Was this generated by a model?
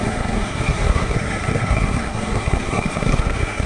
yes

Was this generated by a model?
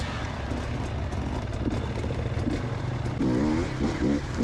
no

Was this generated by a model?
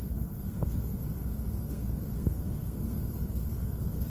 yes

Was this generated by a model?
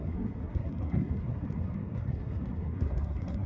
yes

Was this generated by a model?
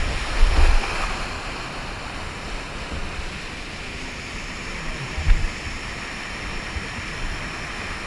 no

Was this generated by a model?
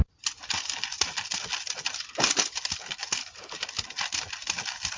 no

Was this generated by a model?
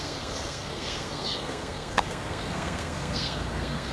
yes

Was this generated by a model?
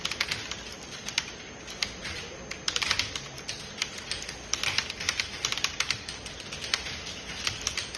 no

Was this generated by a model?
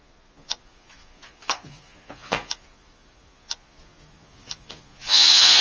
yes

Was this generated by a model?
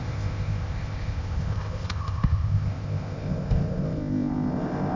yes